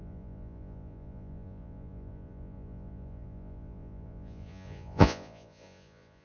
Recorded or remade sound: remade